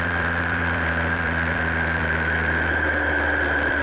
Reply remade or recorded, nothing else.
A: remade